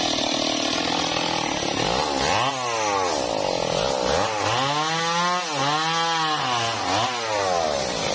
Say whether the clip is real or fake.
real